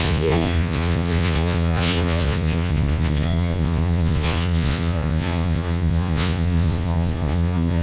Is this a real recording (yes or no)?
no